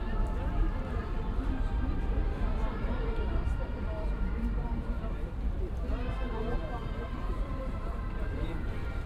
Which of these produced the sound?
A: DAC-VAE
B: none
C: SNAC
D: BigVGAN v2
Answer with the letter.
D